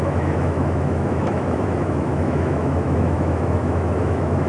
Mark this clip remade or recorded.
remade